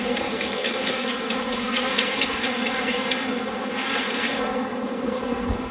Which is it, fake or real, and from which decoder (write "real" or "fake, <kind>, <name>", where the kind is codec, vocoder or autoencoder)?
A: fake, codec, SNAC